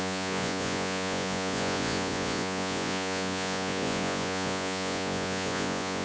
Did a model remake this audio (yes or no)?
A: yes